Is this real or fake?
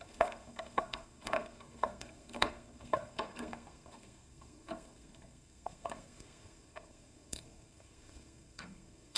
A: fake